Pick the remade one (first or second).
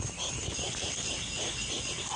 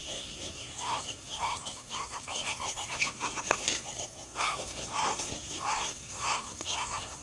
second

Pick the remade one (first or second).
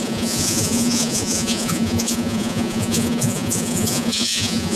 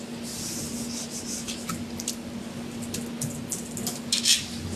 first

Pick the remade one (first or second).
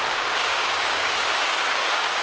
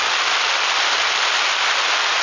first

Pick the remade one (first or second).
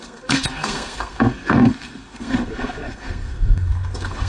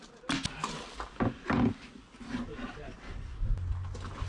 first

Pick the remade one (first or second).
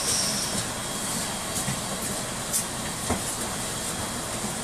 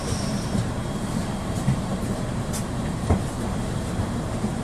second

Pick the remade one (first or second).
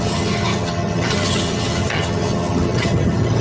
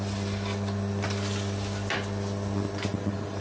first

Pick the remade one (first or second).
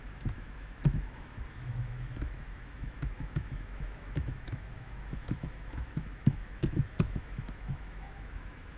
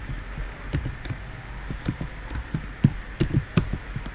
first